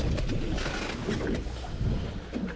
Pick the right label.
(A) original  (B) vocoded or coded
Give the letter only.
A